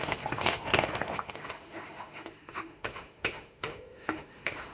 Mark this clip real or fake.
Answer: fake